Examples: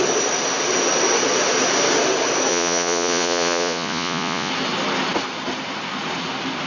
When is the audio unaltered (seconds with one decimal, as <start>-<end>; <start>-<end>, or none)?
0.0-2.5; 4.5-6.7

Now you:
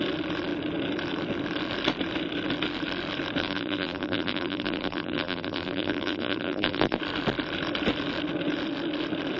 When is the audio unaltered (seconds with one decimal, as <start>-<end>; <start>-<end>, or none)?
0.0-3.4; 7.0-9.4

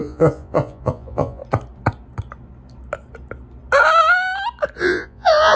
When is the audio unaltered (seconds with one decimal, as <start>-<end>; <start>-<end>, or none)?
1.4-4.8

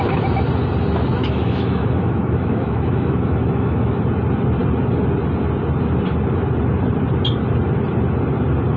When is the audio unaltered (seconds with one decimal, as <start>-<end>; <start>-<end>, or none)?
0.0-1.2; 4.0-8.8